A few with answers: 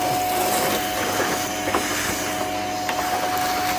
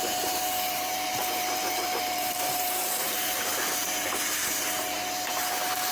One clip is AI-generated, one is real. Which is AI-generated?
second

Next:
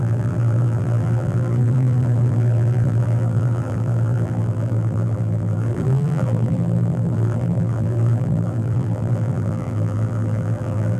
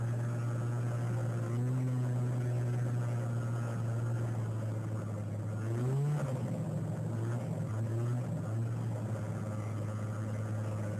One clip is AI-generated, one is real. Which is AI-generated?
first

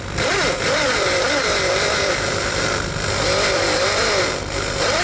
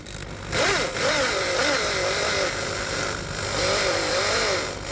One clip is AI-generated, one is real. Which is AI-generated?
first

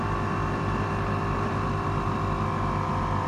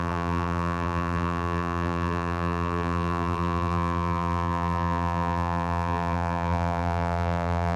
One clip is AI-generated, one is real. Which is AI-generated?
second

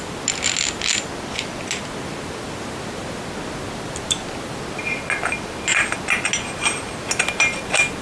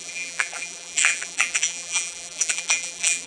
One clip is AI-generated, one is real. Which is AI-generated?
second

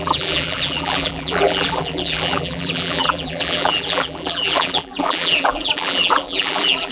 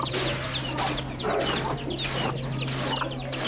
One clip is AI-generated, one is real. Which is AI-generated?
first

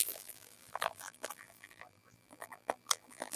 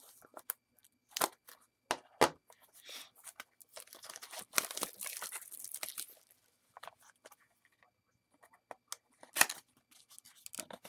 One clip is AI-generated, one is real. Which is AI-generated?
first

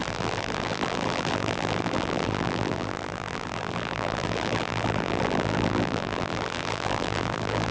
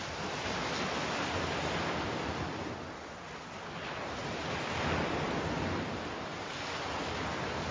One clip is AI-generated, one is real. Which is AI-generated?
first